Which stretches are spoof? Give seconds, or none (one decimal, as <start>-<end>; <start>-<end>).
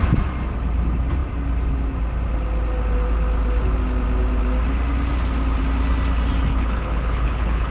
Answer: 6.5-7.7